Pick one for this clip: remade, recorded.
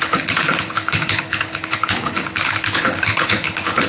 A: remade